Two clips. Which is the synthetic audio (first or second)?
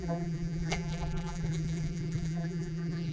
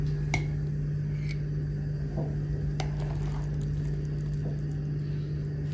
first